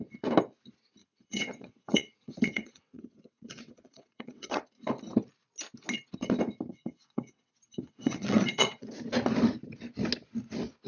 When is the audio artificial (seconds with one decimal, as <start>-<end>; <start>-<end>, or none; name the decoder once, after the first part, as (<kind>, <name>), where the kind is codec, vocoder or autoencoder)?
1.0-4.6 (vocoder, WaveNeXt); 6.7-8.9